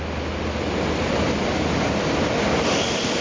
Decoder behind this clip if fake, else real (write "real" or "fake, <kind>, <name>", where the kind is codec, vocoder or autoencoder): real